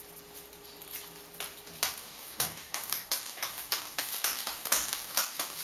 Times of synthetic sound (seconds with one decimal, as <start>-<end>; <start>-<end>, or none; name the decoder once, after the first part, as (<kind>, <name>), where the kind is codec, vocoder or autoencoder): 2.0-5.6 (codec, DAC)